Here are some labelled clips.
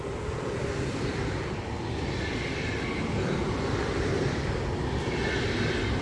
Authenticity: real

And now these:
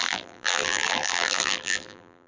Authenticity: fake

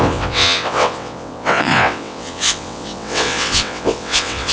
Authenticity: fake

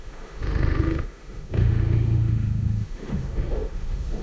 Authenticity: fake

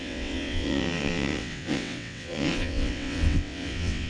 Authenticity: fake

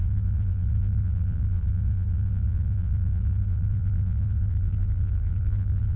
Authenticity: fake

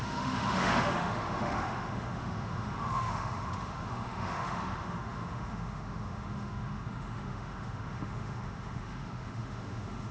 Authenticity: fake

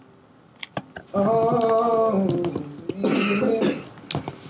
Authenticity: real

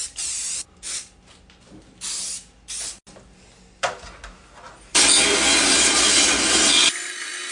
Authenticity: real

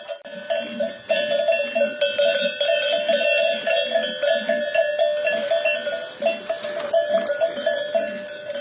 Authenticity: real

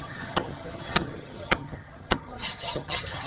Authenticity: fake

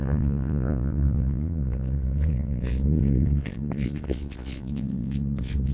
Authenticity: fake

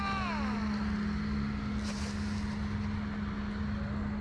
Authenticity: real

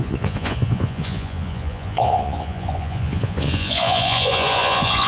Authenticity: fake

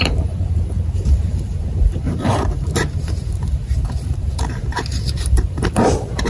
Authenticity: fake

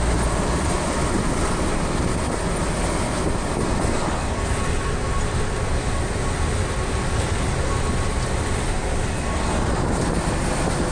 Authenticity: real